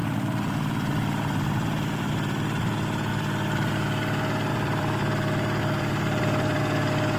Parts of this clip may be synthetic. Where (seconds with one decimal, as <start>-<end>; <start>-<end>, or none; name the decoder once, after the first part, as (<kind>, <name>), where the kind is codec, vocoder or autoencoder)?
0.0-2.1 (vocoder, BigVGAN v2); 3.1-3.7; 4.5-5.0; 5.6-6.6